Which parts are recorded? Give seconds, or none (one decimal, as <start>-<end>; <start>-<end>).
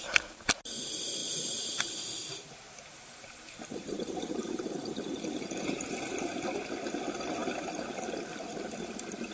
0.0-1.2; 1.7-2.9; 6.3-9.3